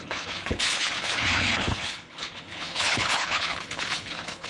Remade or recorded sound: remade